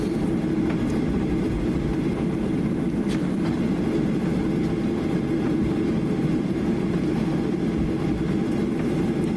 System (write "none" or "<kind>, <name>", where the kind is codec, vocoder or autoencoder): none